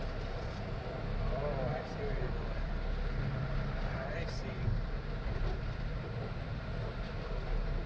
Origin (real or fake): fake